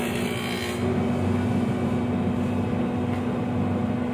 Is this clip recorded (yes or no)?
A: yes